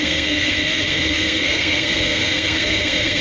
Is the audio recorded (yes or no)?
no